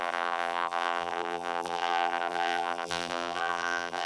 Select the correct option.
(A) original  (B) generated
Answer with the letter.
B